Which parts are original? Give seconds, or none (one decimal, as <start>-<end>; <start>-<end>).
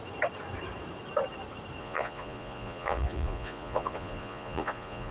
0.0-1.8